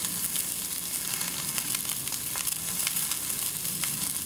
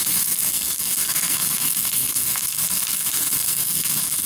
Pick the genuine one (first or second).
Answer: first